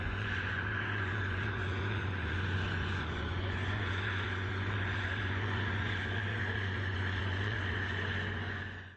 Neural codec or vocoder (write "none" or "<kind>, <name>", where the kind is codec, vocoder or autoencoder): vocoder, Vocos